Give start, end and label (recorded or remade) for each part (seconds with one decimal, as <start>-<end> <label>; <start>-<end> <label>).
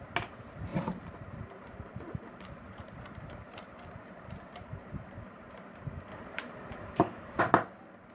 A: 0.0-0.7 recorded; 0.7-5.2 remade; 5.2-6.1 recorded; 6.1-7.4 remade; 7.4-8.1 recorded